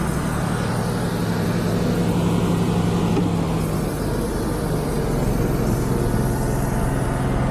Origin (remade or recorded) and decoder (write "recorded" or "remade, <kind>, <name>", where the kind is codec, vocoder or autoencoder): recorded